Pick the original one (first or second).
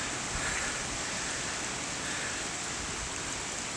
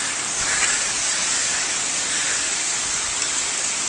first